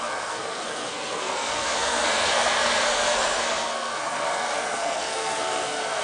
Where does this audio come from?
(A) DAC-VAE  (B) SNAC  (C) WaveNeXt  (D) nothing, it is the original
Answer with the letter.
B